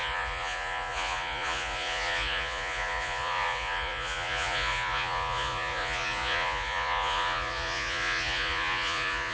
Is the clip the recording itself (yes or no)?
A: no